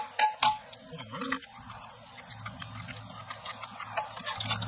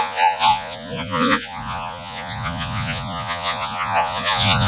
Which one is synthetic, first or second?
second